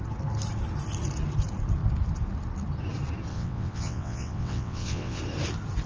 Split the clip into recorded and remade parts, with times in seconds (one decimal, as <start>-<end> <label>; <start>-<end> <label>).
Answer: 0.0-3.3 recorded; 3.3-5.2 remade; 5.2-5.9 recorded